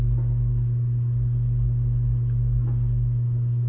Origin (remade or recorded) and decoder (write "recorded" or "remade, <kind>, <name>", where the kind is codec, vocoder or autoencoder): recorded